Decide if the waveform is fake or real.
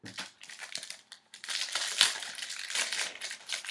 real